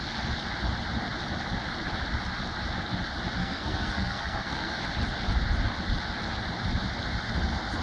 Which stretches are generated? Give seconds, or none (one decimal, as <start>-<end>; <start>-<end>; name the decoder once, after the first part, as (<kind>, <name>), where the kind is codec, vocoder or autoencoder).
3.4-4.8 (codec, SNAC)

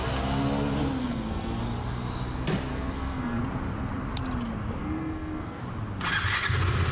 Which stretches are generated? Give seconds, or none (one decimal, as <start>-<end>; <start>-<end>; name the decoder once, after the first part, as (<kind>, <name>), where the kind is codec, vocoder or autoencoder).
1.0-1.6 (codec, SNAC); 2.7-3.4; 4.8-5.6

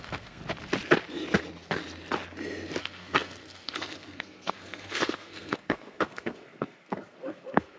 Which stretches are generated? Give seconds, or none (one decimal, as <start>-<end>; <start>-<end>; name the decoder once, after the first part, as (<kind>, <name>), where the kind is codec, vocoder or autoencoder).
0.0-0.4 (codec, SNAC); 2.8-7.8